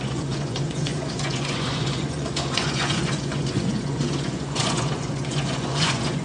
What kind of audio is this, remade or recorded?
remade